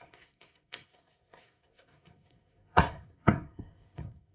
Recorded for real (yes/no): no